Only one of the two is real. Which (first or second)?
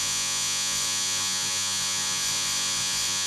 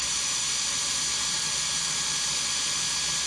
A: second